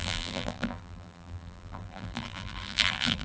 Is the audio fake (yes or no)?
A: yes